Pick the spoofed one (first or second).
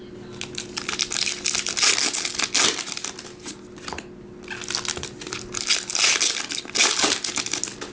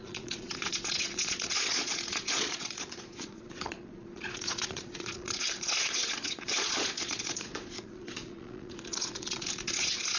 second